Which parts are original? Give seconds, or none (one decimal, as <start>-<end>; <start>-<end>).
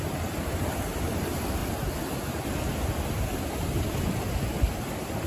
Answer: 1.6-4.8